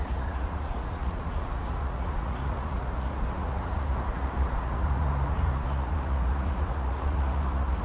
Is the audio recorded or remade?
remade